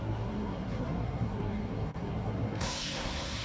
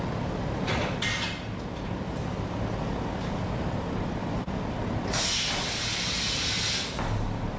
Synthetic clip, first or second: first